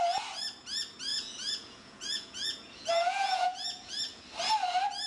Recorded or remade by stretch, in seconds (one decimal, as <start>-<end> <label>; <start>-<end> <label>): 0.0-1.1 recorded; 1.1-4.2 remade; 4.2-5.1 recorded